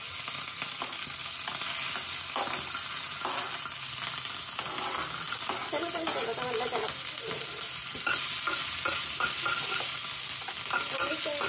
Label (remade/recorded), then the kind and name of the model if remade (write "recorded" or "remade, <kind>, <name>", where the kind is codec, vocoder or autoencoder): recorded